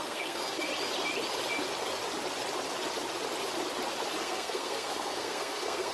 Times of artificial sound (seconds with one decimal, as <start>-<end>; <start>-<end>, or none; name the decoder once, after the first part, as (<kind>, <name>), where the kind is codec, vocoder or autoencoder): 0.0-0.7 (codec, SNAC); 4.2-5.9